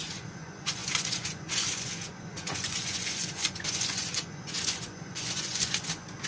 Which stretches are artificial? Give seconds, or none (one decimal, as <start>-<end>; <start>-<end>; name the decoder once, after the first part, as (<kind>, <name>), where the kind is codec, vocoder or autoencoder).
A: 0.0-6.3 (vocoder, Vocos)